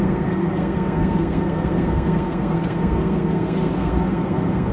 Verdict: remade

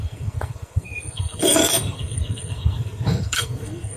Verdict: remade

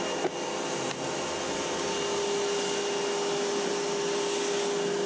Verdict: recorded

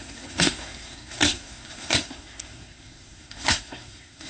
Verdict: remade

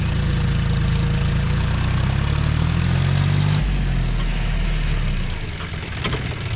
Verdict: recorded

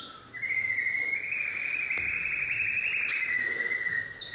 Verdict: recorded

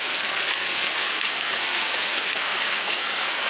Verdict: remade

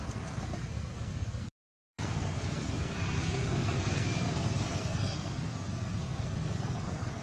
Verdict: remade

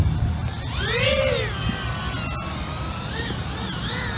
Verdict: recorded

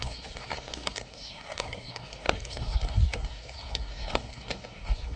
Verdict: remade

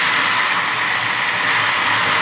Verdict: recorded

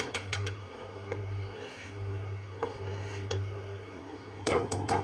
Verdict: remade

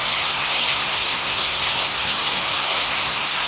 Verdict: remade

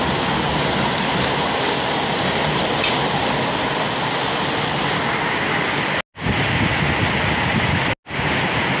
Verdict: recorded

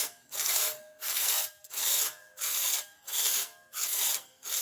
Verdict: remade